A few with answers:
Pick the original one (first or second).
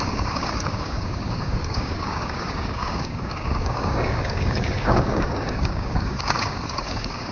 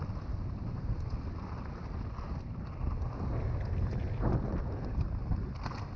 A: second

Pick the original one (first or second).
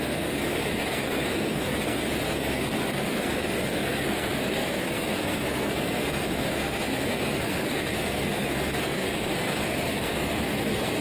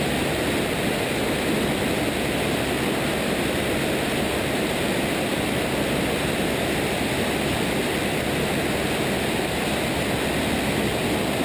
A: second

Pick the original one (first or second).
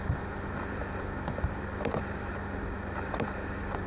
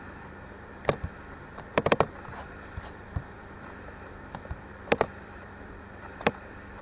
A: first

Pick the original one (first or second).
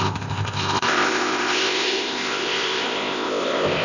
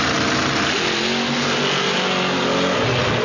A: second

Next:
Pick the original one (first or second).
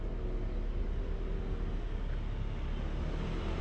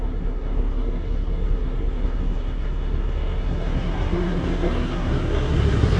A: first